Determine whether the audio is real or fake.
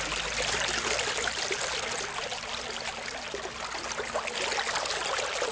real